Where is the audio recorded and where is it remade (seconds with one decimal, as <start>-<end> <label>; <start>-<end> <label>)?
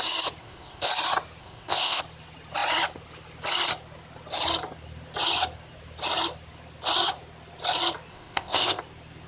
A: 0.0-0.4 recorded; 0.4-0.9 remade; 0.9-1.4 recorded; 1.4-2.0 remade; 2.0-8.1 recorded; 8.1-8.8 remade; 8.8-9.3 recorded